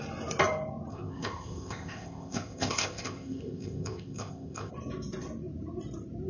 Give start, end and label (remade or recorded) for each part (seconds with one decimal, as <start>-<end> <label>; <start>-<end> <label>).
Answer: 0.0-0.9 recorded; 0.9-4.7 remade; 4.7-6.3 recorded